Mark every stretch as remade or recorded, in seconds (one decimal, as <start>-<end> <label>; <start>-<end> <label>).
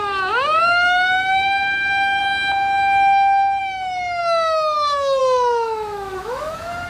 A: 0.0-2.2 remade; 2.2-3.6 recorded; 3.6-6.9 remade